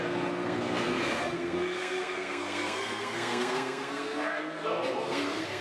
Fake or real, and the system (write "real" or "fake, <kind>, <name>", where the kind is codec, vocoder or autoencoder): fake, codec, SNAC